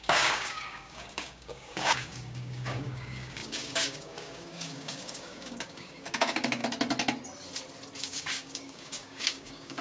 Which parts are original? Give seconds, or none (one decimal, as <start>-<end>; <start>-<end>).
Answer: 6.6-8.0